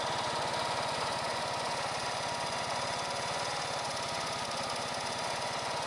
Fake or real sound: fake